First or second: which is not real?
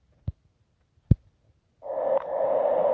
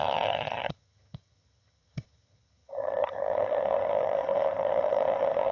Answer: second